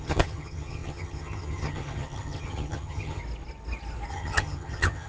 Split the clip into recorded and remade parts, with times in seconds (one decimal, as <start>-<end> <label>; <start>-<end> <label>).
0.0-3.2 remade; 3.2-4.1 recorded; 4.1-5.1 remade